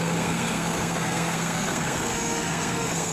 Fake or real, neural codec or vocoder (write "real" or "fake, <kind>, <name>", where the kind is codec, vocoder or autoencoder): fake, codec, SNAC